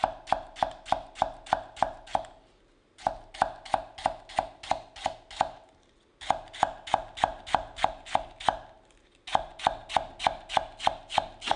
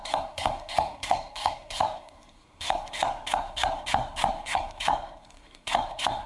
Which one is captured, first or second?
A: first